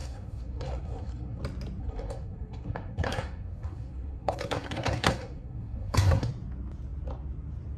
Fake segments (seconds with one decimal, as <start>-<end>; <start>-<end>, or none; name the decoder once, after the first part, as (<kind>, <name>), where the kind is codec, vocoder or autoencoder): 0.0-1.4 (codec, SNAC); 1.8-6.3